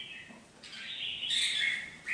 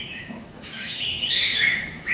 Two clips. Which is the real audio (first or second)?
first